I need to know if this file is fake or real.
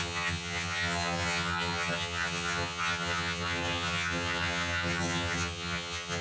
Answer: fake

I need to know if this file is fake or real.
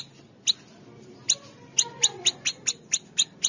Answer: real